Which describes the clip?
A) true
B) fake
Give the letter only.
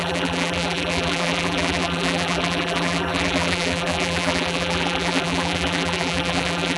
B